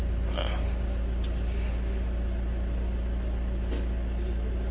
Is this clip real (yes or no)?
yes